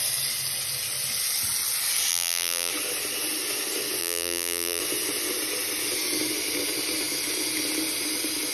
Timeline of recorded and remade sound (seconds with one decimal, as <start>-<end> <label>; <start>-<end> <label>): 0.0-2.1 recorded; 2.1-2.7 remade; 2.7-4.0 recorded; 4.0-4.8 remade; 4.8-8.5 recorded